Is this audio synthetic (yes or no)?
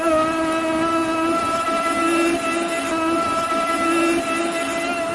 no